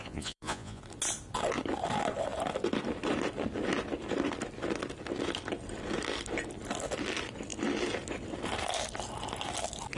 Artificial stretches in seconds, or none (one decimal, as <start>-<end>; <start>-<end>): 0.0-0.8